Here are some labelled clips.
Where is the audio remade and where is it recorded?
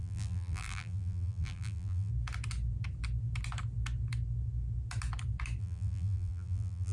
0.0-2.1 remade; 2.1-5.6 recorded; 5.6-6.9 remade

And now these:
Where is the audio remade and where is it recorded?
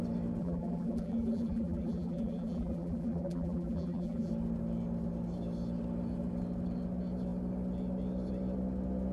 0.0-0.4 recorded; 0.4-4.3 remade; 4.3-9.1 recorded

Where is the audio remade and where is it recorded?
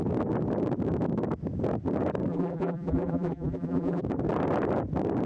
0.0-2.3 recorded; 2.3-4.0 remade; 4.0-5.3 recorded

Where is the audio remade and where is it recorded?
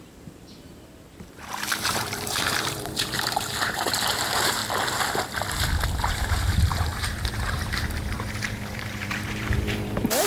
0.0-4.6 remade; 4.6-6.0 recorded; 6.0-10.3 remade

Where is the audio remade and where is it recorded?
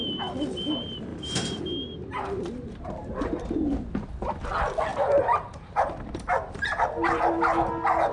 0.0-1.1 recorded; 1.1-1.6 remade; 1.6-2.0 recorded; 2.0-3.4 remade; 3.4-4.9 recorded; 4.9-7.2 remade; 7.2-8.1 recorded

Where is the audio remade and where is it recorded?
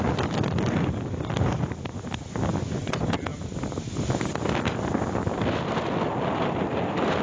0.0-3.3 recorded; 3.3-4.2 remade; 4.2-7.2 recorded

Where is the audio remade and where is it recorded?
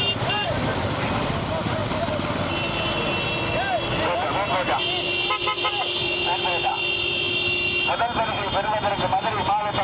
0.0-9.8 recorded